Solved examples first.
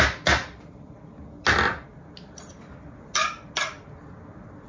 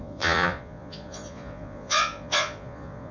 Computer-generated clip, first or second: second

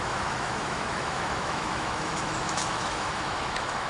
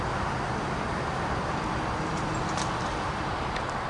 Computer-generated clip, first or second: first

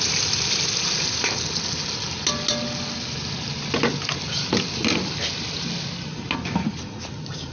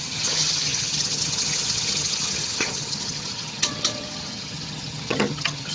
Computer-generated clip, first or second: second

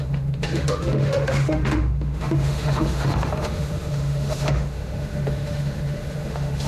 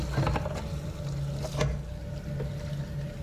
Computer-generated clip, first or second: first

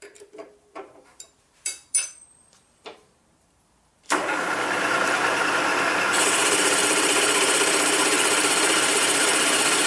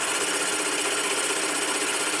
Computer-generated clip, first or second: first